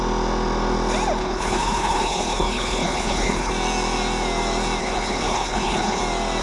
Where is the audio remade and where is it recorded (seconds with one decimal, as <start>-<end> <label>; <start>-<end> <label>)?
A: 0.0-1.2 recorded; 1.2-3.5 remade; 3.5-4.8 recorded; 4.8-6.0 remade; 6.0-6.4 recorded